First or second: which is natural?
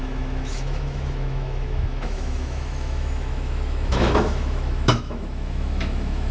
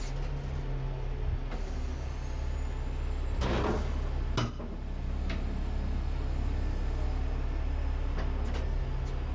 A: second